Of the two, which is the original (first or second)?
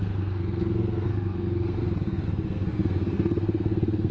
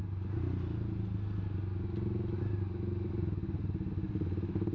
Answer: second